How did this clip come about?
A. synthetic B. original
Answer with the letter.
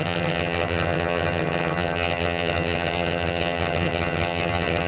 A